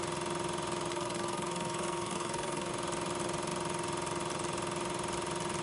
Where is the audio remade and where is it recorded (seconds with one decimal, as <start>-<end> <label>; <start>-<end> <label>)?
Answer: 0.0-0.9 recorded; 0.9-2.7 remade; 2.7-5.6 recorded